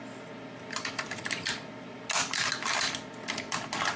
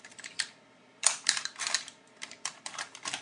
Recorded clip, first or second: first